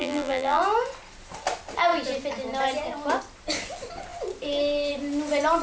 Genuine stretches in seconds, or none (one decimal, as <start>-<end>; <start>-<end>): 0.6-5.6